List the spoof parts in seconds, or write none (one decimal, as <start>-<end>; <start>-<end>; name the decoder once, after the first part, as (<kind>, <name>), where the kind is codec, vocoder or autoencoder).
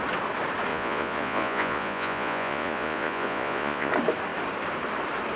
0.7-3.9 (vocoder, Vocos)